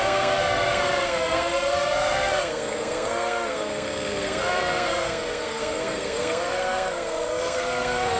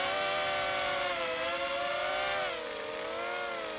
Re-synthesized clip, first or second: first